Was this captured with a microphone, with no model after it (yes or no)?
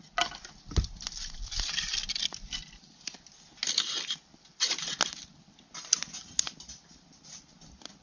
yes